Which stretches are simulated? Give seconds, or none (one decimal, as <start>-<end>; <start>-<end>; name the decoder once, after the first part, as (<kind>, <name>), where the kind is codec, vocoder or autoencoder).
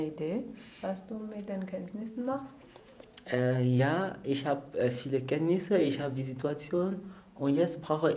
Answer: 0.5-3.8 (vocoder, Vocos); 5.8-8.2